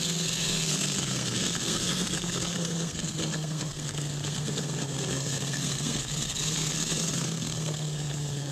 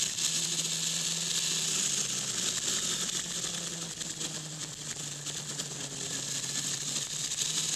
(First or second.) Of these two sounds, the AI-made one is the first